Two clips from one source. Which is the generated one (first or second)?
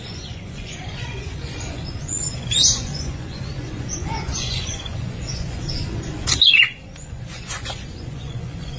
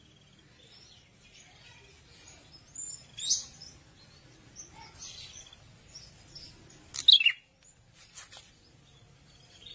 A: first